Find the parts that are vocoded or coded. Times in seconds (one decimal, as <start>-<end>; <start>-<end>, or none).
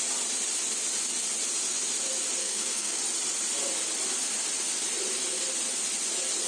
2.4-3.0